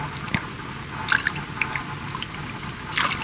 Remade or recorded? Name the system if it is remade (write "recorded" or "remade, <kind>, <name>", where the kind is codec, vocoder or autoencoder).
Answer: recorded